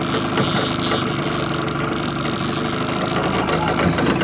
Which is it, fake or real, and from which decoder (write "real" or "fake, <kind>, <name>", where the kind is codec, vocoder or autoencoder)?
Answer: real